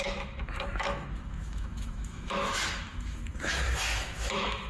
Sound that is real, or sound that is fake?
fake